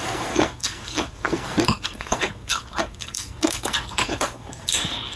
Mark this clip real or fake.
fake